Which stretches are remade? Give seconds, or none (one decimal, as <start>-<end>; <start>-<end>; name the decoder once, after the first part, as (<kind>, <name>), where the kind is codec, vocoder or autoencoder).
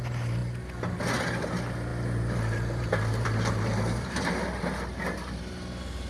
1.9-4.3 (vocoder, BigVGAN v2)